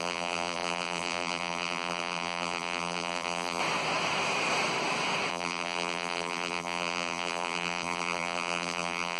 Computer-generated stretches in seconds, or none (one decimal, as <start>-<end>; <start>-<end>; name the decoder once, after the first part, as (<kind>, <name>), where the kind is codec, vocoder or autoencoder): 0.0-3.6 (vocoder, BigVGAN v2); 5.3-9.2